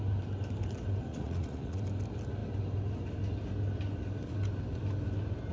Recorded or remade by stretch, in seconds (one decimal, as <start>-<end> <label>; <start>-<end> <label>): 0.0-1.1 recorded; 1.1-1.8 remade; 1.8-5.5 recorded